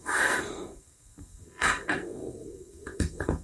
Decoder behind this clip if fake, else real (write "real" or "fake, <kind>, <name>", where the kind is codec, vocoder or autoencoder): fake, codec, SNAC